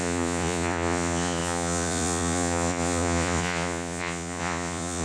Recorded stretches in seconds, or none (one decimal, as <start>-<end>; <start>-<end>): none